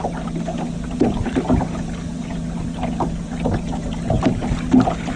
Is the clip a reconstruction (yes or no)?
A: no